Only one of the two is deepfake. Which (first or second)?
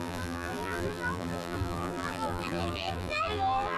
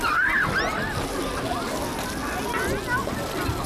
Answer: first